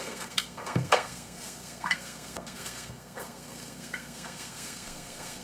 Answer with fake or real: fake